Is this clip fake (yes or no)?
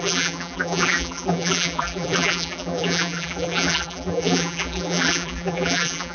yes